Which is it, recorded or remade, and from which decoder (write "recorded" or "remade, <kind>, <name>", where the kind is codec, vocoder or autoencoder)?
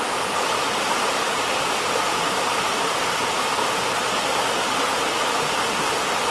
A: recorded